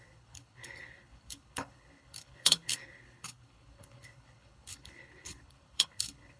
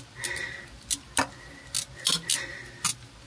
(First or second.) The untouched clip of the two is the second